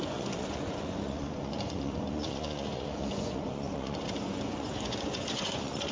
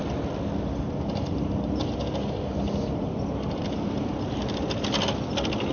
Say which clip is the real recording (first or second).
second